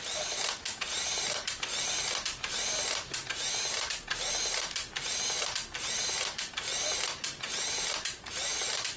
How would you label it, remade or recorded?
remade